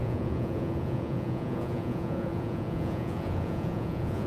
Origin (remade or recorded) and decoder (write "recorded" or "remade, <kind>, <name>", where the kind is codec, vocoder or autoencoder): remade, vocoder, Vocos